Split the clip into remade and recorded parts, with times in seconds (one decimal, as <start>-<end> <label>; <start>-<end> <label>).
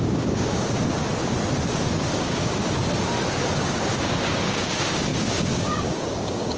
0.0-0.6 remade; 0.6-2.0 recorded; 2.0-2.6 remade; 2.6-3.7 recorded; 3.7-6.6 remade